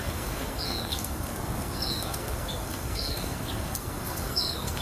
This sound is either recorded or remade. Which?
remade